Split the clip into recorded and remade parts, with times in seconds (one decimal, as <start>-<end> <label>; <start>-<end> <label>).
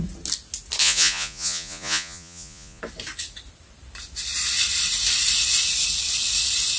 0.0-0.8 recorded; 0.8-2.8 remade; 2.8-6.8 recorded